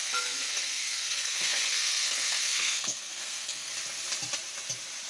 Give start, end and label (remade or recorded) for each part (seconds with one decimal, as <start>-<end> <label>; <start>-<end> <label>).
0.0-3.7 remade; 3.7-5.1 recorded